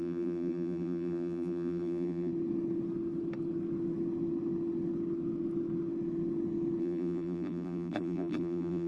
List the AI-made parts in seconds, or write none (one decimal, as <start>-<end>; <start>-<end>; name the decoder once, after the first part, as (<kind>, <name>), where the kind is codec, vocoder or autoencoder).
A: 0.0-2.3 (vocoder, BigVGAN v2); 6.8-8.9